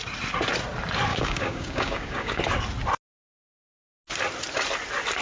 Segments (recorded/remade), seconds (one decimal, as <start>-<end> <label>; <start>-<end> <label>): 0.0-1.1 recorded; 1.1-2.4 remade; 2.4-5.2 recorded